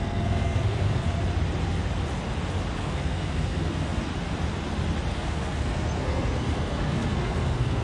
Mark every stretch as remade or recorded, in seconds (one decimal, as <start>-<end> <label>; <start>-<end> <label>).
0.0-1.1 remade; 1.1-2.8 recorded; 2.8-4.1 remade; 4.1-5.1 recorded; 5.1-7.8 remade